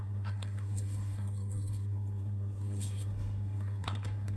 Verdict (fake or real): fake